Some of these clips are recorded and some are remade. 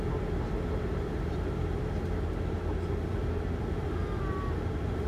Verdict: recorded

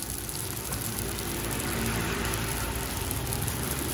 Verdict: remade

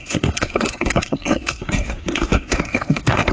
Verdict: remade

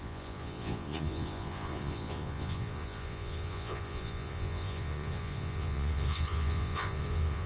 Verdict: remade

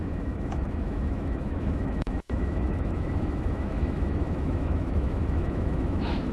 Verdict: remade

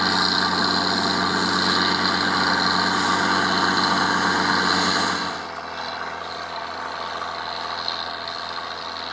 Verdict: recorded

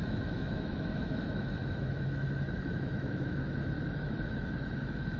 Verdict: remade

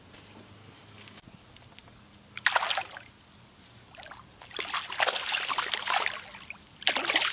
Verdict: recorded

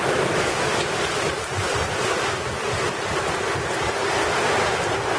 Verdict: recorded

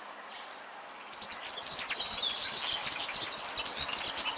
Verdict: recorded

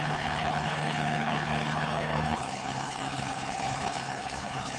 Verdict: remade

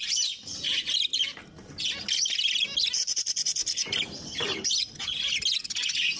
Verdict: recorded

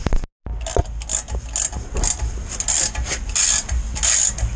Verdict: recorded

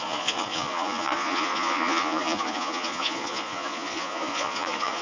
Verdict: remade